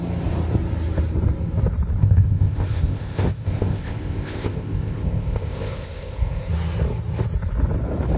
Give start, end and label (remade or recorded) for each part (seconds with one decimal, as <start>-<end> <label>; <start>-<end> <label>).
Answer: 0.0-2.0 recorded; 2.0-6.5 remade; 6.5-8.2 recorded